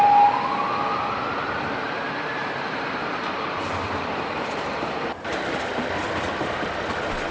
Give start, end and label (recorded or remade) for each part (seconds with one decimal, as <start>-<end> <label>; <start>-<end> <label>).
0.0-2.4 recorded; 2.4-6.8 remade; 6.8-7.3 recorded